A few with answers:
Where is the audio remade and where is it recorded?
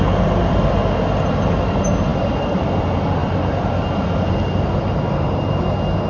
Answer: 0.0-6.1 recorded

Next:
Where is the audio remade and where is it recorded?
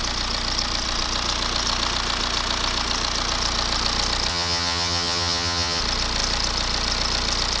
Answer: 0.0-4.3 recorded; 4.3-5.8 remade; 5.8-7.6 recorded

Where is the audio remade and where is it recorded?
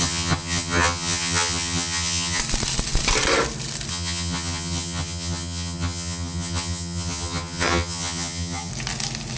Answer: 0.0-2.4 remade; 2.4-3.9 recorded; 3.9-8.7 remade; 8.7-9.4 recorded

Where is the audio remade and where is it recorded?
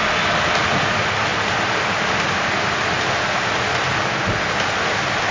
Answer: 0.0-5.3 recorded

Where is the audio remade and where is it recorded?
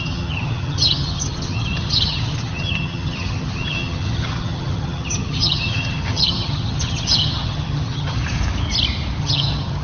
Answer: 0.0-8.2 remade; 8.2-9.2 recorded; 9.2-9.8 remade